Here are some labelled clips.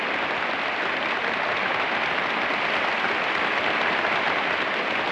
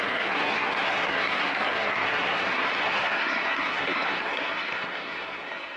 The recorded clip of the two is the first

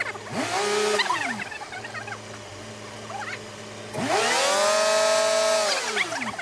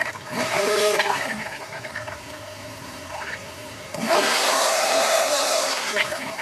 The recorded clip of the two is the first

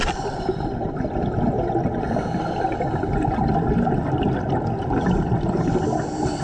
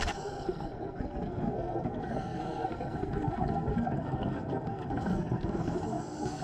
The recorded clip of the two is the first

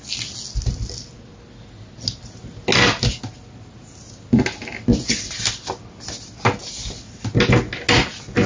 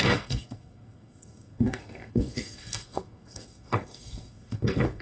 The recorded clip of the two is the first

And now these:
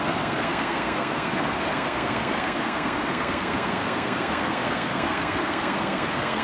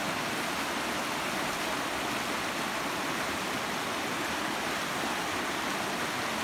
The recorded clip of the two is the second